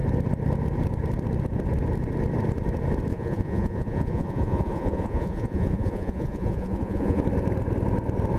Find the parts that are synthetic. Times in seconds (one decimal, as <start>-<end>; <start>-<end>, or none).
3.1-7.2